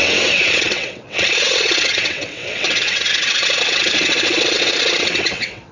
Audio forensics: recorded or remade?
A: remade